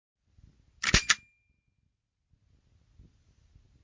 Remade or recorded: recorded